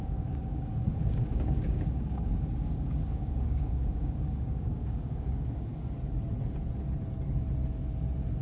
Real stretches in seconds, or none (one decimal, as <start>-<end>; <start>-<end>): 5.7-8.4